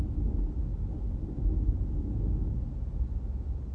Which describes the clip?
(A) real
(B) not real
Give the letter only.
A